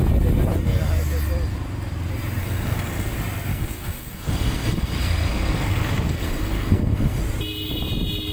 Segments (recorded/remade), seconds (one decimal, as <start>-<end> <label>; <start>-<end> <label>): 0.0-2.4 recorded; 2.4-3.1 remade; 3.1-3.5 recorded; 3.5-7.2 remade; 7.2-8.3 recorded